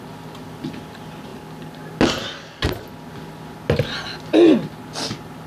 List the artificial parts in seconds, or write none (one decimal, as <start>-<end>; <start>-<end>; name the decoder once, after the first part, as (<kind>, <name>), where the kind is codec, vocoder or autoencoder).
none